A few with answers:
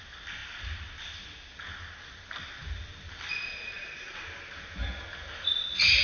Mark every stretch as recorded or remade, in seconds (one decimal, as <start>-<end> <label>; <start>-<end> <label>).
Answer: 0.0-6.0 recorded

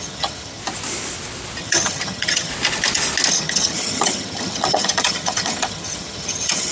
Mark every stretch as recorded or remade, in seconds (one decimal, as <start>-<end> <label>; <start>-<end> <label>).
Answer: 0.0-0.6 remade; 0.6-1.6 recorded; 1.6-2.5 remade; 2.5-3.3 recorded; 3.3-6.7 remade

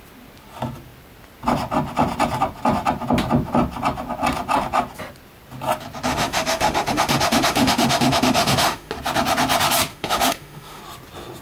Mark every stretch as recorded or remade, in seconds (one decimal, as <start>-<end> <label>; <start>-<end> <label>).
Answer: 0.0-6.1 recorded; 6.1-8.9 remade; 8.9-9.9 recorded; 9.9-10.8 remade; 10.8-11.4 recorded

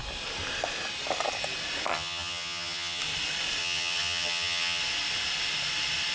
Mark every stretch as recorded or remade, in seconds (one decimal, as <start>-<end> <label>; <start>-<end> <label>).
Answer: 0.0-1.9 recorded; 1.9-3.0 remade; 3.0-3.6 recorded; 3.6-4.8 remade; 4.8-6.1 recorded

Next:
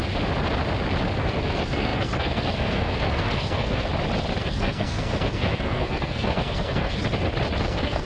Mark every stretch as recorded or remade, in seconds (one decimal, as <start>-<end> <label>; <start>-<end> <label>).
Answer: 0.0-1.2 recorded; 1.2-3.9 remade; 3.9-4.4 recorded; 4.4-7.0 remade; 7.0-7.6 recorded; 7.6-8.1 remade

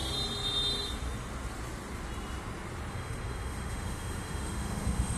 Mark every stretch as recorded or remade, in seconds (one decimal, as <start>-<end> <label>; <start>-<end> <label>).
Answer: 0.0-2.9 recorded; 2.9-5.2 remade

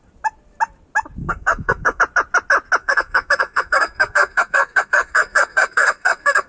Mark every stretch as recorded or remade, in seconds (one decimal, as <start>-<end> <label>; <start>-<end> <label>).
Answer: 0.0-1.2 recorded; 1.2-2.0 remade; 2.0-2.8 recorded; 2.8-6.5 remade

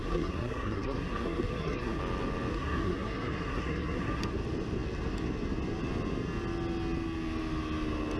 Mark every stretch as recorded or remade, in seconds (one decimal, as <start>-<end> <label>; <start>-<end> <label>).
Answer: 0.0-2.0 remade; 2.0-2.5 recorded; 2.5-4.2 remade; 4.2-8.2 recorded